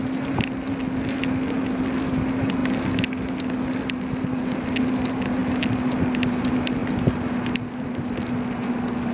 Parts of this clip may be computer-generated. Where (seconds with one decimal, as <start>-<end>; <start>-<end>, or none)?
none